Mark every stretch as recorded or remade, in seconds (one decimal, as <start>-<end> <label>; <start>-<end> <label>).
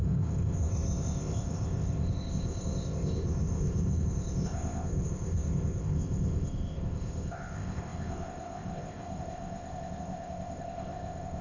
0.0-11.4 remade